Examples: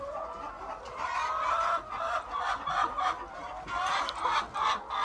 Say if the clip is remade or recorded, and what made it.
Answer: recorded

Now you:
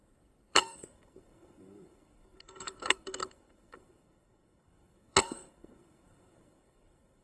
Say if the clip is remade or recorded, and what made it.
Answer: remade, codec, SNAC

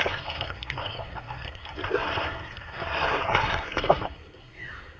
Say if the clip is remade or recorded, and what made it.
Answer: remade, codec, SNAC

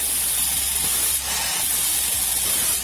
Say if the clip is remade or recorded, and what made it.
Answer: recorded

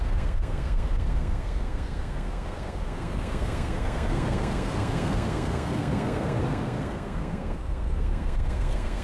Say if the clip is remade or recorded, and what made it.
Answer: remade, codec, SNAC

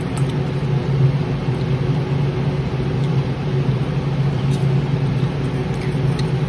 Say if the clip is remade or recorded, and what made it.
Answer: recorded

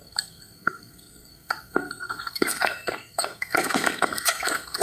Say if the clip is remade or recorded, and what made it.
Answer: remade, codec, SNAC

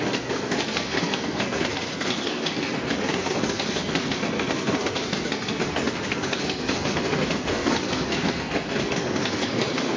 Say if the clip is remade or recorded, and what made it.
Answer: remade, codec, SNAC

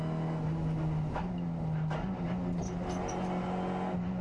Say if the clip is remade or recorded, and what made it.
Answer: recorded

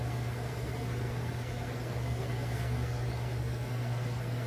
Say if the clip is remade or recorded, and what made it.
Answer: remade, codec, SNAC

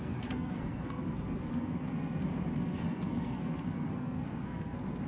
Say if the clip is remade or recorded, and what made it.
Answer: remade, codec, SNAC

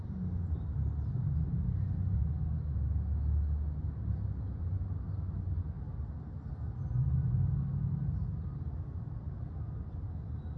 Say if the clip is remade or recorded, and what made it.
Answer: recorded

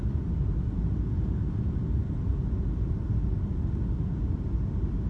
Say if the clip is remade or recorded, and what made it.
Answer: recorded